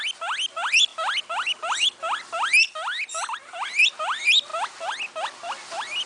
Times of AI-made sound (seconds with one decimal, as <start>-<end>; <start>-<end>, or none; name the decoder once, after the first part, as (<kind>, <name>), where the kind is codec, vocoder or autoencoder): none